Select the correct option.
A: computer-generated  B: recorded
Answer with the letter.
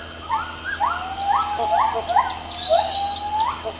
B